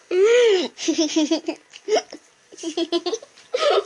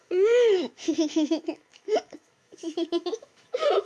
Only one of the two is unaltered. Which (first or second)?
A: first